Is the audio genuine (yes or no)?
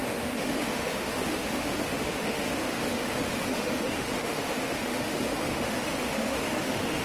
no